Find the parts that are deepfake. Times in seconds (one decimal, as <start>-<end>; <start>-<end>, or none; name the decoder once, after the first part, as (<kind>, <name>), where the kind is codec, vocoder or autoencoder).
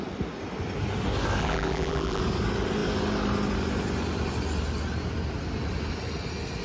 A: 1.4-2.2 (vocoder, BigVGAN v2)